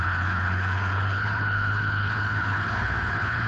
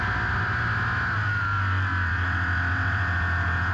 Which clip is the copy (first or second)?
first